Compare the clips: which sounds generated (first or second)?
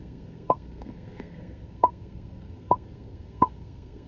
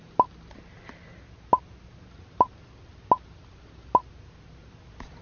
first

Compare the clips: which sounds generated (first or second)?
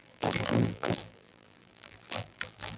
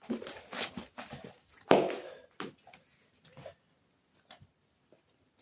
first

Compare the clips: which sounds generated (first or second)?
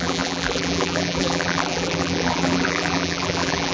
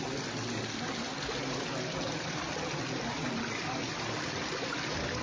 first